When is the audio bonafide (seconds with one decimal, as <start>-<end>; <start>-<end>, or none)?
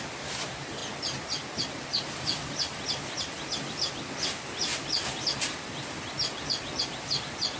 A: 0.0-7.6